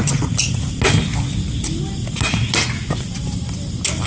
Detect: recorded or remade recorded